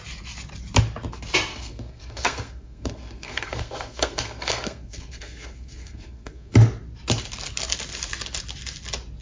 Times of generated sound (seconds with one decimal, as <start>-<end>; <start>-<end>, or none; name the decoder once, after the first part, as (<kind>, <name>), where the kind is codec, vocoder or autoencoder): 1.5-6.5 (codec, SNAC)